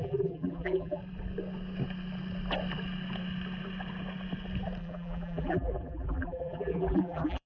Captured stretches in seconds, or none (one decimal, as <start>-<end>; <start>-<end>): 1.0-4.8